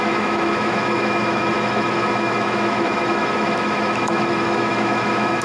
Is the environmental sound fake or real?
fake